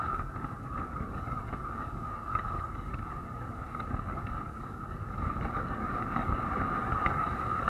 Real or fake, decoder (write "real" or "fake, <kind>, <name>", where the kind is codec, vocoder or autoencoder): fake, codec, DAC